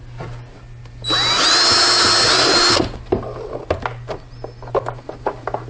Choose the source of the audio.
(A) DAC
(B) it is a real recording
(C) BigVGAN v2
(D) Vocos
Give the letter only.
B